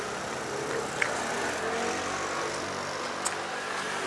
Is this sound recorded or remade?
recorded